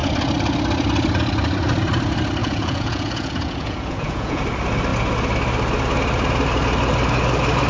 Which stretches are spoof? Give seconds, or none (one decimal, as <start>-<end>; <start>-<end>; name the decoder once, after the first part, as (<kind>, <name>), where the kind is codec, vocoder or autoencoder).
2.4-4.4 (vocoder, Vocos)